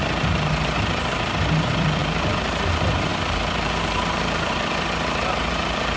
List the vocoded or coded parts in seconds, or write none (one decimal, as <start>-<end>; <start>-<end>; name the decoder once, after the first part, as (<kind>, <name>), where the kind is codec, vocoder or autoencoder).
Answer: 0.0-6.0 (vocoder, BigVGAN v2)